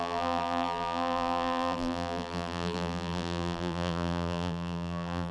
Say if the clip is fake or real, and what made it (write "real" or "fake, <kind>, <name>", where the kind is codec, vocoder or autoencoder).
fake, vocoder, BigVGAN v2